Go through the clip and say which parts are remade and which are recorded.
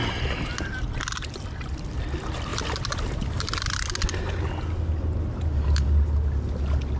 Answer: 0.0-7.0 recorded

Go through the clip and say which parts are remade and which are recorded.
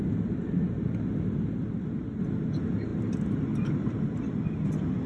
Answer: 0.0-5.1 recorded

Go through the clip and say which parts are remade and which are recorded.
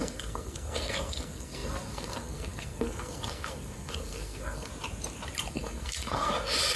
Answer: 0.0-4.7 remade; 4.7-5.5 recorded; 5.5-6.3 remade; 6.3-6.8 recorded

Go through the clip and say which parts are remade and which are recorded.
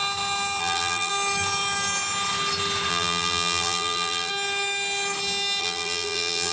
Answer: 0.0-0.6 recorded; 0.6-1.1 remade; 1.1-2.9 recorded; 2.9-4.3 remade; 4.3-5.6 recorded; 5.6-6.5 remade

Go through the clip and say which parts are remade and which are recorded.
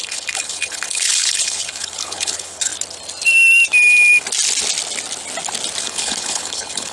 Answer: 0.0-2.7 remade; 2.7-5.8 recorded; 5.8-6.9 remade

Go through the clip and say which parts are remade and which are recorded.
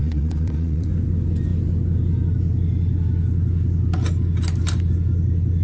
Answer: 0.0-0.9 remade; 0.9-5.6 recorded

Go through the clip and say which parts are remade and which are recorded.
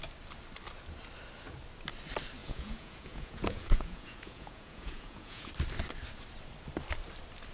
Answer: 0.0-2.4 recorded; 2.4-5.5 remade; 5.5-7.5 recorded